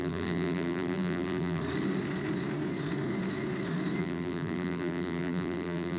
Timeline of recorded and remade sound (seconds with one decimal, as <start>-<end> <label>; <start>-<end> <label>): 0.0-1.6 remade; 1.6-4.0 recorded; 4.0-6.0 remade